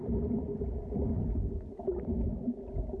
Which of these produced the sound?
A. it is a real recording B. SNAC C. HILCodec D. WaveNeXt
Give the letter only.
A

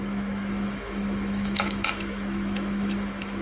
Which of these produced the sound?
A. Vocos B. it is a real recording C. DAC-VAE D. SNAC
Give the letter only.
C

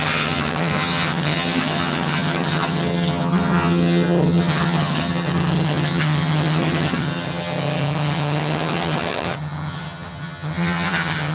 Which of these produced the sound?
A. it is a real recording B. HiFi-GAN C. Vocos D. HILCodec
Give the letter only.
B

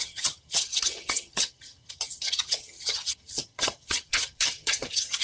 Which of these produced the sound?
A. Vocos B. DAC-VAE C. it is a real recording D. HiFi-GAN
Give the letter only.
D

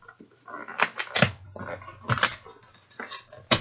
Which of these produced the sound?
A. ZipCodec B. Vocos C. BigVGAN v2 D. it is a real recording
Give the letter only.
D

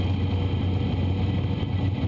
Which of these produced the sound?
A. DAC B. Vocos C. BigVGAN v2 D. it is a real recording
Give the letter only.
D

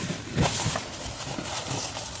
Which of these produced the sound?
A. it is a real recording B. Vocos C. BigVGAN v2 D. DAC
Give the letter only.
C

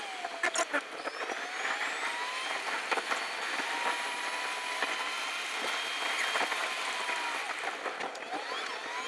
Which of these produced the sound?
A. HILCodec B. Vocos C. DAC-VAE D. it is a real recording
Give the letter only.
D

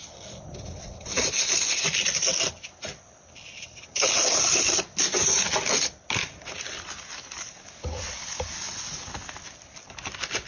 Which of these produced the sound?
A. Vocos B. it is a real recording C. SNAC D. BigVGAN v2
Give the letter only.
B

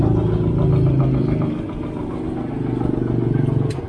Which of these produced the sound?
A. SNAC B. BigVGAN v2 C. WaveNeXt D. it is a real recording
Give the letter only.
D